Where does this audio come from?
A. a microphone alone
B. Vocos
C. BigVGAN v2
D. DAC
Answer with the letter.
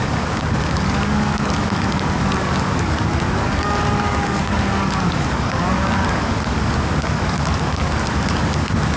D